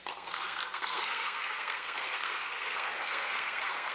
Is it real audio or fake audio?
fake